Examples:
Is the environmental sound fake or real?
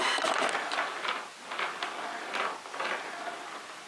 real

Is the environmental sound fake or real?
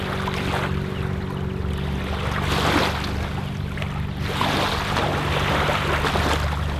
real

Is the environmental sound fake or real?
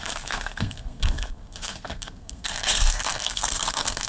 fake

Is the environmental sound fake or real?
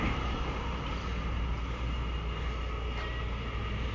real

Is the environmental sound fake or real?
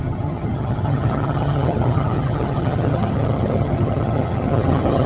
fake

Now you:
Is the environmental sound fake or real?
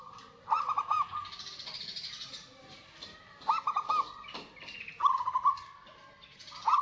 real